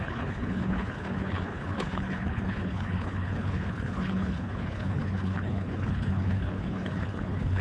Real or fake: fake